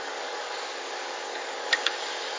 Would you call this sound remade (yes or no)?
yes